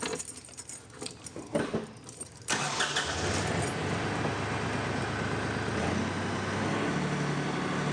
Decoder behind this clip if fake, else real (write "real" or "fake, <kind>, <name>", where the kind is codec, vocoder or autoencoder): real